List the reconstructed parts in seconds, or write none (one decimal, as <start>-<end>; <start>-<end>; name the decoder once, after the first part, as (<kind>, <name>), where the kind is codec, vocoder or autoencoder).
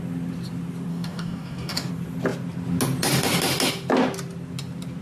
0.9-1.9 (codec, DAC)